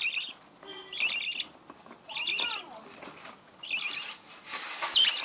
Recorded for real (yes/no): yes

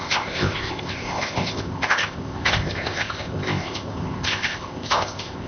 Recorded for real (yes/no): no